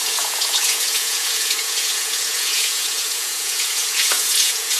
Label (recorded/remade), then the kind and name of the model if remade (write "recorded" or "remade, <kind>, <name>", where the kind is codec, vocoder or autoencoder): remade, vocoder, Vocos